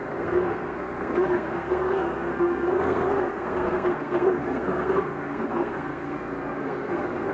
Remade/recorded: remade